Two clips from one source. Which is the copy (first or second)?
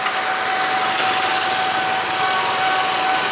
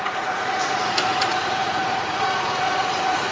second